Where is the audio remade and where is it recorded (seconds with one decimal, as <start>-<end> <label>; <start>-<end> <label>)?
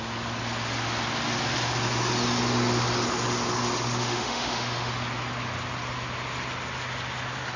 0.0-4.0 recorded; 4.0-4.9 remade; 4.9-7.6 recorded